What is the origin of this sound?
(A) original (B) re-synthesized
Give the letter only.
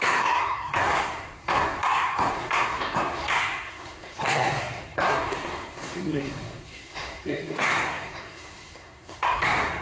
B